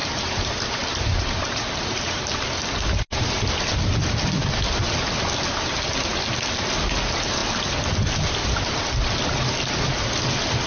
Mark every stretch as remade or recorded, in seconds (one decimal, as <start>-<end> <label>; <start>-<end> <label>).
0.0-2.2 remade; 2.2-10.7 recorded